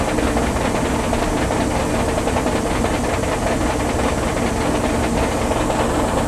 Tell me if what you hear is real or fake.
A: real